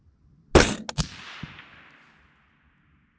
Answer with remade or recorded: recorded